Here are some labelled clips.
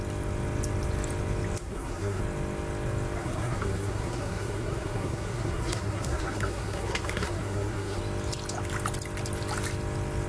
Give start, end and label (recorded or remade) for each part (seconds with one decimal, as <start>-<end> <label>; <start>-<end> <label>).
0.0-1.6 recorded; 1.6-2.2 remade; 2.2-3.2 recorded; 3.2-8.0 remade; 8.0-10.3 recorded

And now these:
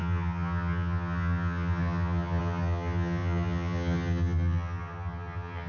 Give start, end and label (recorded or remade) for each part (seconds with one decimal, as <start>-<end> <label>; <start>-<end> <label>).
0.0-5.7 remade

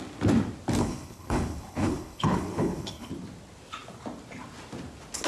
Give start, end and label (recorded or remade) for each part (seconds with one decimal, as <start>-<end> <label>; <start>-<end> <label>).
0.0-0.8 recorded; 0.8-3.1 remade; 3.1-5.3 recorded